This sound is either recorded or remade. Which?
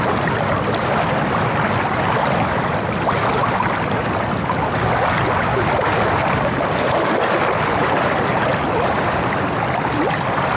recorded